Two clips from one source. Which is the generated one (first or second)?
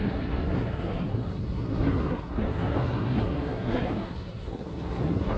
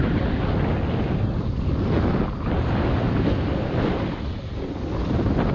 first